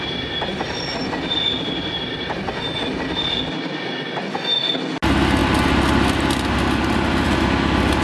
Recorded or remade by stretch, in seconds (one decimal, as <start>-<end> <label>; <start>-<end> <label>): 0.0-0.5 recorded; 0.5-2.5 remade; 2.5-8.0 recorded